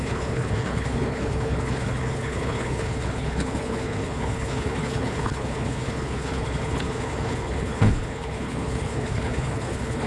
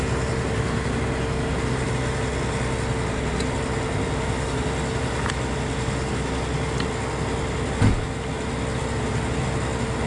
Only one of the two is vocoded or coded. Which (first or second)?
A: first